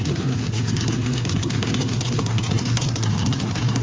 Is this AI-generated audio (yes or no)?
yes